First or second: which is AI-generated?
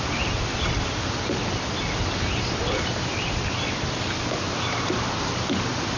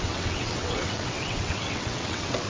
second